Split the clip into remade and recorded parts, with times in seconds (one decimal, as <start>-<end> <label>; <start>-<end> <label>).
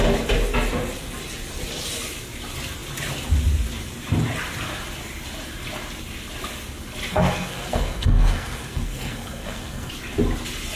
0.0-7.1 recorded; 7.1-9.9 remade; 9.9-10.8 recorded